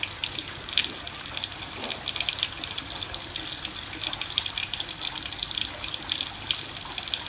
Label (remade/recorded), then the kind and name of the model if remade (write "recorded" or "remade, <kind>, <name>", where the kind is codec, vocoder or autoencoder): recorded